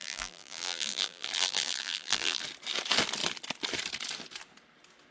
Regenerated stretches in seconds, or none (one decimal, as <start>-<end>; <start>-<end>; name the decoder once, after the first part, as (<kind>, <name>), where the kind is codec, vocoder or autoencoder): 0.0-2.4 (vocoder, BigVGAN v2)